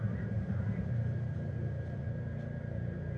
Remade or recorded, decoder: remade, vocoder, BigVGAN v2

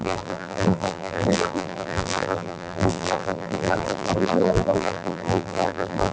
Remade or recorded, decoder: remade, vocoder, BigVGAN v2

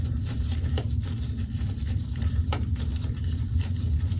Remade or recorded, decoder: remade, vocoder, BigVGAN v2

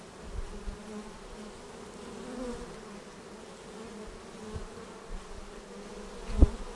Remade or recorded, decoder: recorded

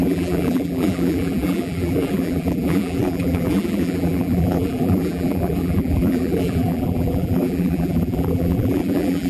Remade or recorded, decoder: remade, vocoder, BigVGAN v2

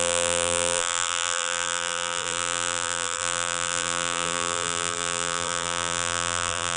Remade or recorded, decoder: remade, vocoder, BigVGAN v2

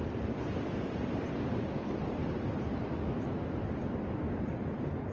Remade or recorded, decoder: remade, vocoder, BigVGAN v2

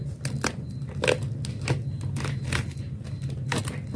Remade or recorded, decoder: recorded